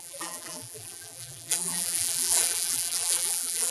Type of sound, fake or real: fake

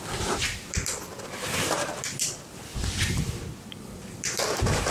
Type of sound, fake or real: fake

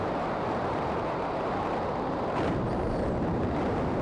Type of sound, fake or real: fake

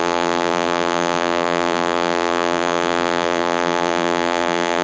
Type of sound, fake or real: fake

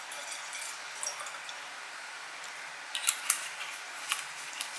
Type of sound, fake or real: fake